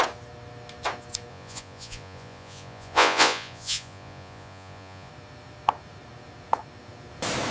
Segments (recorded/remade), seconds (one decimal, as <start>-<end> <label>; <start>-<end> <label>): 0.0-1.3 recorded; 1.3-5.1 remade; 5.1-7.5 recorded